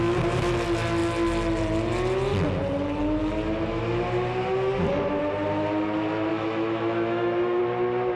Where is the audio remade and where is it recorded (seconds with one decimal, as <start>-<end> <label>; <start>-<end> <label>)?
0.0-6.3 recorded; 6.3-7.6 remade; 7.6-8.2 recorded